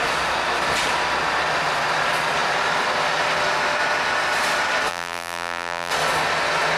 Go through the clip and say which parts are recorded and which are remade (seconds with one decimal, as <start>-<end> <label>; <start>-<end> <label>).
0.0-4.9 recorded; 4.9-5.9 remade; 5.9-6.8 recorded